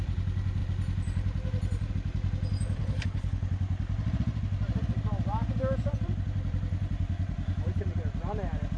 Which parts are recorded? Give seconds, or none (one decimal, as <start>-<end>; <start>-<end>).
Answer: 0.0-2.8; 3.5-8.8